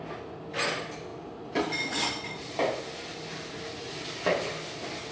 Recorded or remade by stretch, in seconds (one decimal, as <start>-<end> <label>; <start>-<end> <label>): 0.0-5.1 recorded